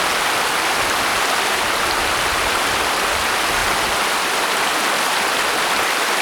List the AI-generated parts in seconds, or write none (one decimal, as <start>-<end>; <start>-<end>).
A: none